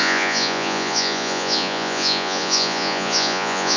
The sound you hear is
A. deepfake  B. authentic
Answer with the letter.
A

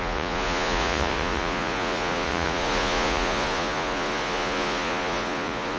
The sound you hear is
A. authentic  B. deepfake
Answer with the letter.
B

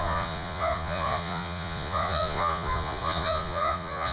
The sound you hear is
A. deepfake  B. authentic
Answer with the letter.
A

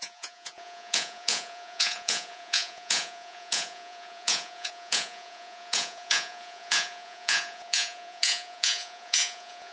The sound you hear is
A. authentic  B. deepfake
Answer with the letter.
B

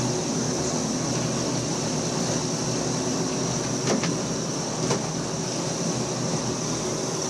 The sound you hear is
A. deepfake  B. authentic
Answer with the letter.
B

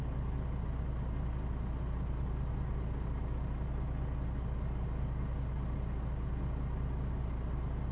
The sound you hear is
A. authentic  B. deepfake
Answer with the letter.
A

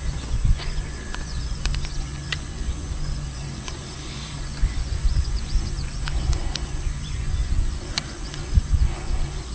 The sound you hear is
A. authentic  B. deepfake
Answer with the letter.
B